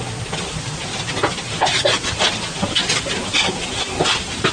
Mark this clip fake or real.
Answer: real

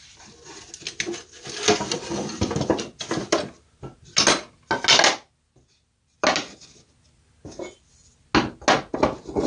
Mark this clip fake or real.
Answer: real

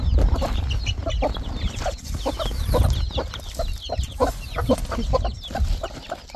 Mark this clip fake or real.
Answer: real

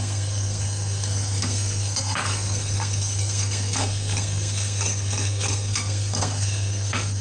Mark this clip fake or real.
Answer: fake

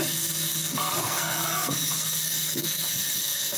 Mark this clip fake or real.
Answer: fake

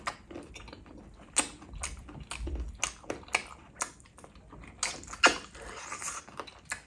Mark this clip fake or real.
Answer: real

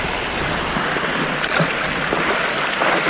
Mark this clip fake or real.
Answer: real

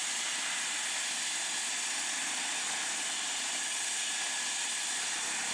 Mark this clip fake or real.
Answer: real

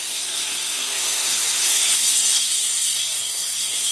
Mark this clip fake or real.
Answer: fake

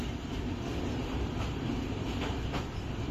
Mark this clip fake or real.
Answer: real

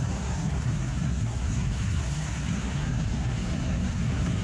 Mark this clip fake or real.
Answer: fake